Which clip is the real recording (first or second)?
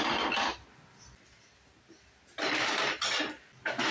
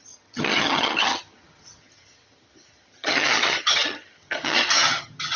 first